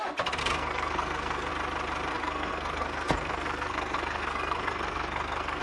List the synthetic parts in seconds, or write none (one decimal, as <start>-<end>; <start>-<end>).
0.4-1.5; 2.1-5.6